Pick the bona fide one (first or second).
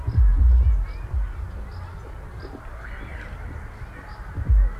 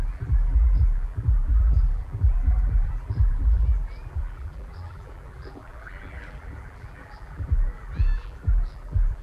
first